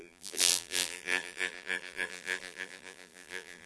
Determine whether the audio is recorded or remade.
remade